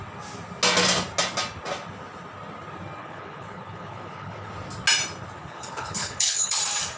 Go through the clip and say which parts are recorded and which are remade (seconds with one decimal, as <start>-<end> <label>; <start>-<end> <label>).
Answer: 0.0-3.0 recorded; 3.0-4.5 remade; 4.5-5.4 recorded; 5.4-6.6 remade; 6.6-7.0 recorded